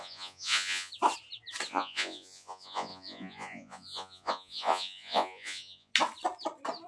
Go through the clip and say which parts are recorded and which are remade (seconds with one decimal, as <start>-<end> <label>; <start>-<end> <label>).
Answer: 0.0-0.9 remade; 0.9-1.7 recorded; 1.7-5.9 remade; 5.9-6.9 recorded